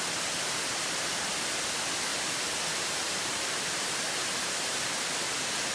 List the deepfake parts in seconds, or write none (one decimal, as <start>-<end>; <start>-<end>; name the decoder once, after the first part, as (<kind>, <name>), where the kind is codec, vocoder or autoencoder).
2.1-4.9 (vocoder, BigVGAN v2)